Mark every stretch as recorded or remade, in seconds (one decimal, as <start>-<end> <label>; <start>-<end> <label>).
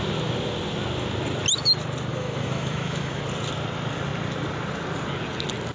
0.0-2.1 recorded; 2.1-3.2 remade; 3.2-5.7 recorded